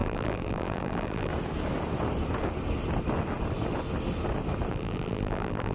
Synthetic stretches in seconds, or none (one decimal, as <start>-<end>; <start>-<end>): 0.0-1.3; 4.7-5.7